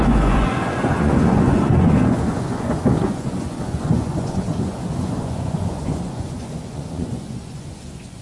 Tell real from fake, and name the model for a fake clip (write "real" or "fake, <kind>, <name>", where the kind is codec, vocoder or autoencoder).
fake, vocoder, Vocos